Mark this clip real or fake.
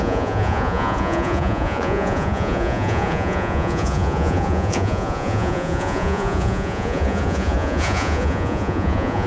fake